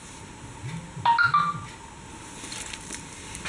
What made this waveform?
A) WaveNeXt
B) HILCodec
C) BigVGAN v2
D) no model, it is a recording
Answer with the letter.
D